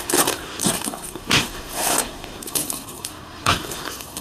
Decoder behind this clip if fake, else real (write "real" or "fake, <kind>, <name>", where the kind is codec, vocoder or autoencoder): fake, codec, SNAC